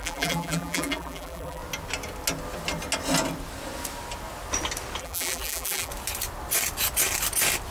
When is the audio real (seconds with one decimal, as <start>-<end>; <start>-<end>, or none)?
1.6-5.0; 5.9-7.7